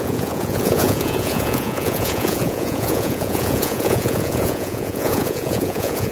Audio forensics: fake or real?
fake